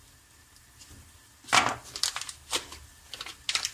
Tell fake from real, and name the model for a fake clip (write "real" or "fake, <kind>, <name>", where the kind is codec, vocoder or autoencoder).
real